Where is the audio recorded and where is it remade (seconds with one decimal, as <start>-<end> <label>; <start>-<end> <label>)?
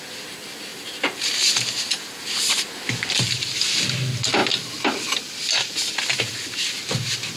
0.0-0.7 recorded; 0.7-2.7 remade; 2.7-7.4 recorded